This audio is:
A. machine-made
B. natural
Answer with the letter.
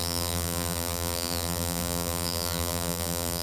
A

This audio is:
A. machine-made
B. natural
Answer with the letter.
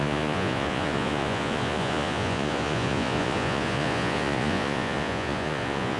A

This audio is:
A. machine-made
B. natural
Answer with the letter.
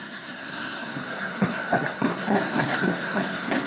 A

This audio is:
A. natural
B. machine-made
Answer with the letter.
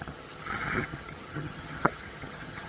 B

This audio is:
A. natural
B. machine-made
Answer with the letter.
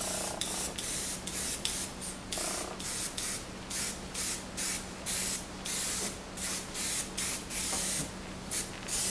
A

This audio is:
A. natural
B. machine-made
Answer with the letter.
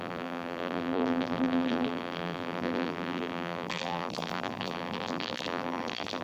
B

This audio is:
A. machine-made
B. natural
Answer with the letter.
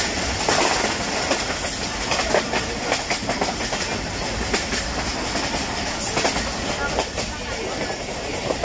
B